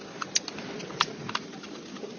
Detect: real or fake real